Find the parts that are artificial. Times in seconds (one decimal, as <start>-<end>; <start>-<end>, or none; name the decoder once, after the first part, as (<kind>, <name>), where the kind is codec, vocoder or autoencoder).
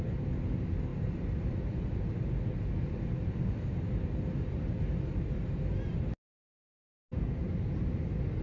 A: none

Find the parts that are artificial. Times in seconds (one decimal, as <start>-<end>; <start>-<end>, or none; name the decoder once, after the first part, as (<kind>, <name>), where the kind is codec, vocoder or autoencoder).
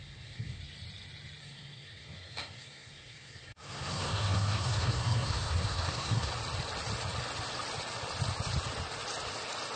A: 0.0-0.6 (codec, SNAC); 1.4-6.3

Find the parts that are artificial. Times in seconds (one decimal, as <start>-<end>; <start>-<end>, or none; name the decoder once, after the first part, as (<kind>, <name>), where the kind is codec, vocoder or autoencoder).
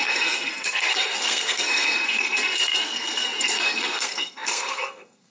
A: 0.0-5.3 (codec, SNAC)